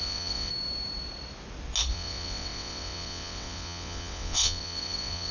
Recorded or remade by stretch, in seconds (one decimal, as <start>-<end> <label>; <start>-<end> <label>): 0.0-0.5 remade; 0.5-1.9 recorded; 1.9-5.3 remade